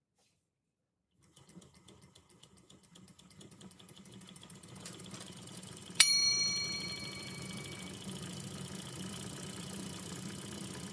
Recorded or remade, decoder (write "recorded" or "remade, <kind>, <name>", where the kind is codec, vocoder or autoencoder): remade, vocoder, BigVGAN v2